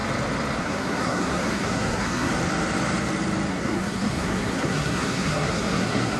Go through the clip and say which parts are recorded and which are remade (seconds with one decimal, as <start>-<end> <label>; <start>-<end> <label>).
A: 0.0-0.6 recorded; 0.6-2.3 remade; 2.3-3.5 recorded; 3.5-6.2 remade